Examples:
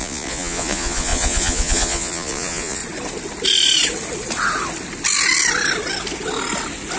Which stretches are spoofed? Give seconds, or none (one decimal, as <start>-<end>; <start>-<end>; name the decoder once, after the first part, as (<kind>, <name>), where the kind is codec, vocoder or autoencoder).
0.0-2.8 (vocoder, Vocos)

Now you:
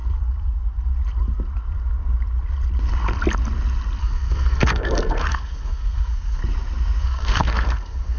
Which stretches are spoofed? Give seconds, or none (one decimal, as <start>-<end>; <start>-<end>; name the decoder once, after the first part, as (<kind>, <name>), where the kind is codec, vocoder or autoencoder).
4.0-6.4 (codec, SNAC); 7.0-8.2

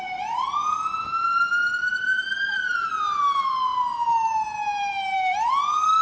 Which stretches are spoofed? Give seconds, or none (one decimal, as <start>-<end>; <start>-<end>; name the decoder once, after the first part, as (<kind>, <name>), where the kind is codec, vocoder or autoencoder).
2.1-2.9 (vocoder, BigVGAN v2); 3.7-5.5

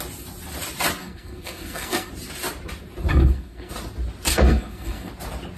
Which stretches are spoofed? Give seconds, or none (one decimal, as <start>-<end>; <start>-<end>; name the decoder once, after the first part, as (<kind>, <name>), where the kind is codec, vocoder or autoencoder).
1.0-2.1 (codec, SNAC); 3.1-3.7; 4.3-5.1

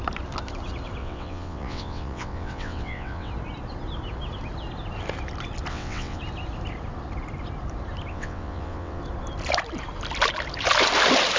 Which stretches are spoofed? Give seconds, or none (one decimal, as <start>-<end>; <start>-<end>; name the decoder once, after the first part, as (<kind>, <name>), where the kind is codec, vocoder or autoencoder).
1.0-3.3 (vocoder, WaveNeXt); 5.7-6.2; 8.1-9.0